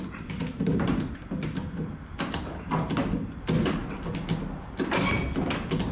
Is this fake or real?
real